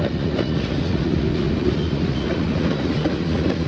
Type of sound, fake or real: fake